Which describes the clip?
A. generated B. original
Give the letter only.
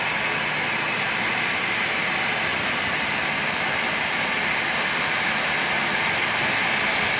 B